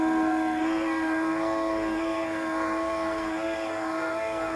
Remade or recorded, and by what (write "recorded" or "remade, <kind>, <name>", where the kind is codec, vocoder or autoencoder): remade, codec, SNAC